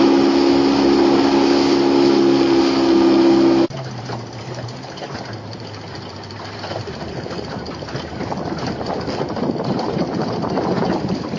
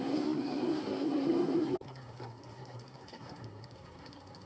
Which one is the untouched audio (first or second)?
first